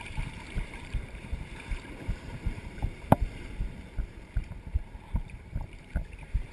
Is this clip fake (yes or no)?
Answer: yes